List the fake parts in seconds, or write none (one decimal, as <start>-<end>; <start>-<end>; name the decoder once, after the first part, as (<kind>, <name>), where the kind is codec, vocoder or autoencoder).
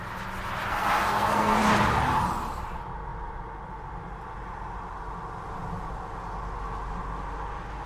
0.7-1.6 (codec, SNAC)